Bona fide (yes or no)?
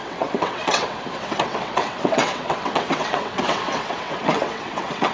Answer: no